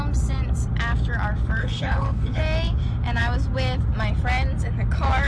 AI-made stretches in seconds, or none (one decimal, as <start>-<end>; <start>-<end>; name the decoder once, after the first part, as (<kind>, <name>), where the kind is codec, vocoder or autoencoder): 1.6-2.4 (codec, HILCodec)